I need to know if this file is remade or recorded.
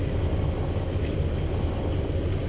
recorded